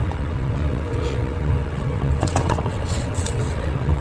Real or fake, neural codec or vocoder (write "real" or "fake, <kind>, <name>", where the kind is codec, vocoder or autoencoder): fake, vocoder, WaveNeXt